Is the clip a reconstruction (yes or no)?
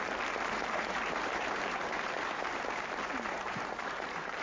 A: yes